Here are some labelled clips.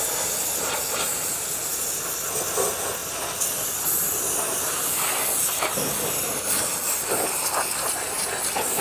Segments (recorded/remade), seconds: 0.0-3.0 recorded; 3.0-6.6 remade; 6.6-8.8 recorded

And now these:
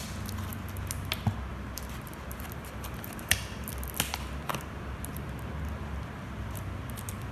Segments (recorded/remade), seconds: 0.0-1.5 recorded; 1.5-3.1 remade; 3.1-7.3 recorded

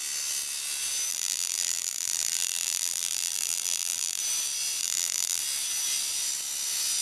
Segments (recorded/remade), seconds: 0.0-1.1 recorded; 1.1-4.2 remade; 4.2-4.8 recorded; 4.8-5.4 remade; 5.4-7.0 recorded

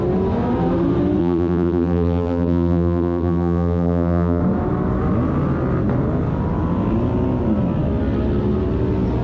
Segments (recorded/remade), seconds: 0.0-1.2 recorded; 1.2-4.4 remade; 4.4-9.2 recorded

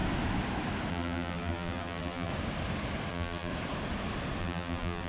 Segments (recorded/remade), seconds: 0.0-0.9 recorded; 0.9-2.3 remade; 2.3-3.1 recorded; 3.1-3.5 remade; 3.5-4.4 recorded; 4.4-5.1 remade

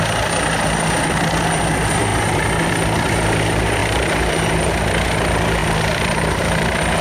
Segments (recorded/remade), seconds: 0.0-3.8 recorded; 3.8-4.7 remade; 4.7-5.6 recorded; 5.6-7.0 remade